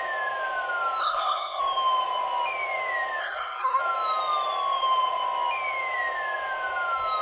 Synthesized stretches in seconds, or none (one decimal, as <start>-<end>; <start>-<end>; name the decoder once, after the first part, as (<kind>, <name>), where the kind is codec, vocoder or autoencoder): 1.0-1.6 (codec, SNAC); 3.2-3.8